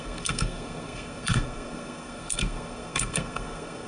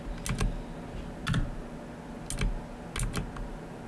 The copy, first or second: first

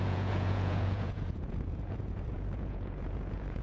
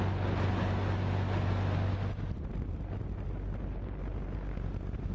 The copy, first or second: first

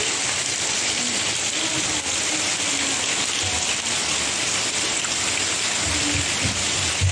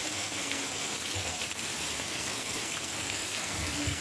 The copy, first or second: second